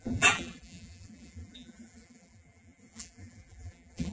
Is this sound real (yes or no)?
no